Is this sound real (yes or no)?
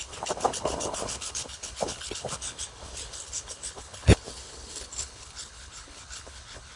no